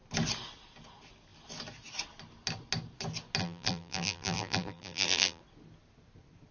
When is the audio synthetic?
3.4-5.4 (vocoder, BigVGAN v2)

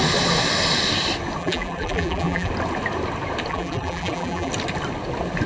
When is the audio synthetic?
1.4-2.5 (vocoder, BigVGAN v2); 3.5-4.5

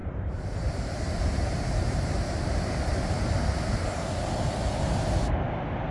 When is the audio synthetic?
0.0-1.8 (vocoder, BigVGAN v2); 2.9-3.8

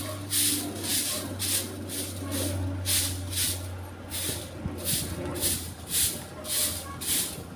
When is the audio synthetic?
5.3-6.4 (vocoder, BigVGAN v2)

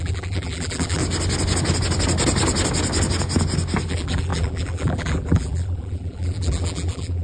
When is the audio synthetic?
0.0-1.0 (vocoder, BigVGAN v2); 3.9-7.2

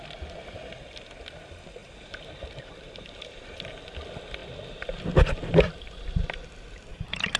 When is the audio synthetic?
1.8-3.7 (vocoder, BigVGAN v2); 6.9-7.4